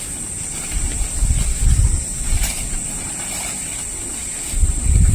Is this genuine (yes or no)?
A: yes